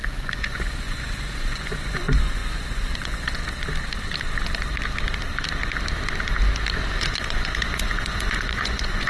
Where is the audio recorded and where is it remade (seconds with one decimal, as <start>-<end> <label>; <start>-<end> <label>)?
0.0-3.4 remade; 3.4-6.9 recorded; 6.9-9.1 remade